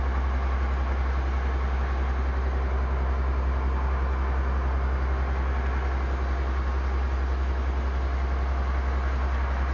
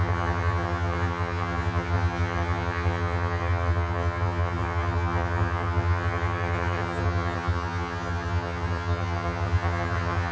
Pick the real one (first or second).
first